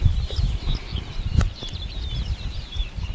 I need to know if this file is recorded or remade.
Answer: recorded